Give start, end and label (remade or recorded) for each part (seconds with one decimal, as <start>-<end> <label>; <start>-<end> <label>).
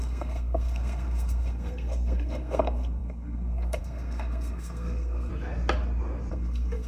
0.0-5.3 remade; 5.3-6.3 recorded; 6.3-6.9 remade